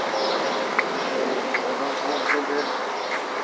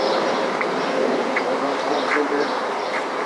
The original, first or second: first